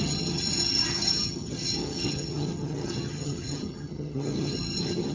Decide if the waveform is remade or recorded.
remade